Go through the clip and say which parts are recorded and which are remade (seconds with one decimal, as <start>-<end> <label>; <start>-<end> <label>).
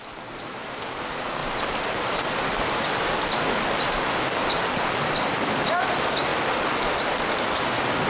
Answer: 0.0-8.1 recorded